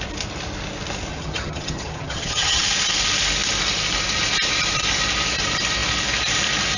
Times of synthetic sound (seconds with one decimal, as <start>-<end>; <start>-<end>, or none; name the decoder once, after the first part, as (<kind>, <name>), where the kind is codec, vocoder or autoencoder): 1.1-2.6 (vocoder, HiFi-GAN)